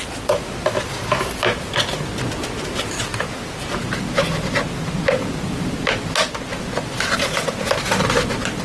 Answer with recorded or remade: recorded